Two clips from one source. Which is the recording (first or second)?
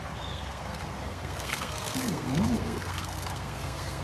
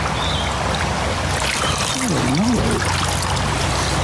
second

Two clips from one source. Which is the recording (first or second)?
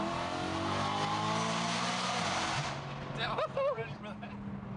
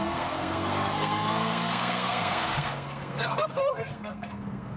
first